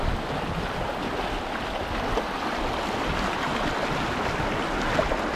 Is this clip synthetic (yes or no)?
no